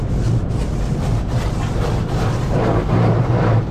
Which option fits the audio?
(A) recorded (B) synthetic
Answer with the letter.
A